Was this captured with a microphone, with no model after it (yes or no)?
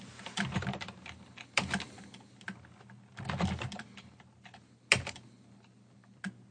yes